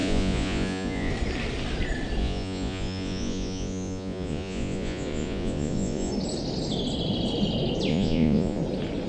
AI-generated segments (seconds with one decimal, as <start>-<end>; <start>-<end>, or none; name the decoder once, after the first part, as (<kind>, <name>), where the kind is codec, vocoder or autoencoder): 0.0-1.1 (vocoder, Vocos); 2.2-6.1; 7.9-8.6